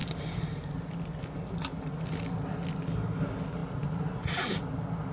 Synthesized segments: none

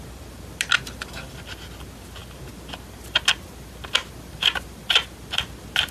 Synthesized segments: none

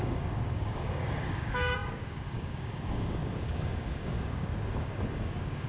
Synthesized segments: 0.0-5.7

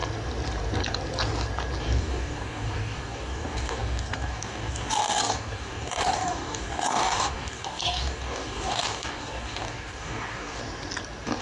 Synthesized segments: 1.8-10.6

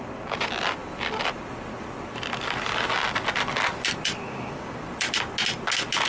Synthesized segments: 4.2-4.8